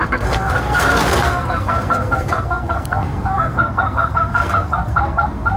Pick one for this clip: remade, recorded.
remade